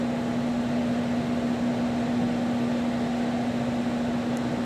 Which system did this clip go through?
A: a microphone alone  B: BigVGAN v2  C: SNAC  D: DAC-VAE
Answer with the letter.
A